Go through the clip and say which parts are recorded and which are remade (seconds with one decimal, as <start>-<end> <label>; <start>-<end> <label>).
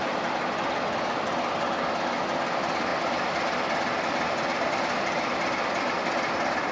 0.0-6.7 recorded